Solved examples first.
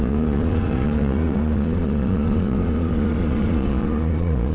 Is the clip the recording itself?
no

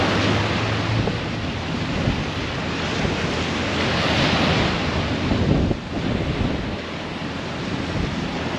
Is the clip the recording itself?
yes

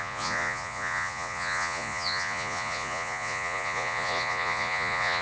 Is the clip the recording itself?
no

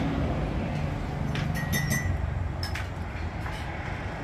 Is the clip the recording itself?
yes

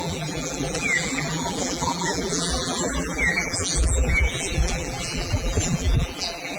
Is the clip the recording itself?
no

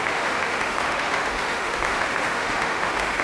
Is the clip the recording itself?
no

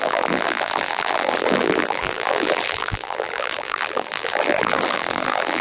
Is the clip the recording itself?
no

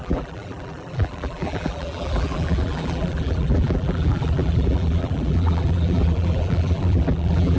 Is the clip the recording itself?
no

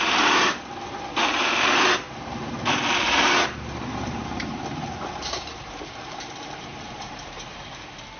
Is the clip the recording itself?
no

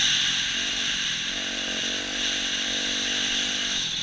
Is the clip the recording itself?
yes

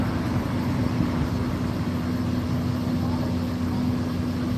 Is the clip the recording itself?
yes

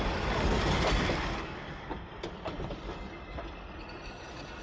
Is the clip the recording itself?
no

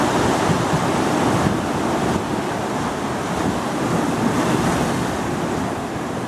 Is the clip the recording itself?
yes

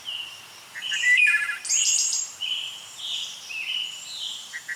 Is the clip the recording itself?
no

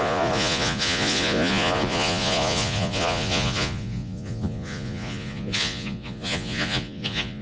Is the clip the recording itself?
no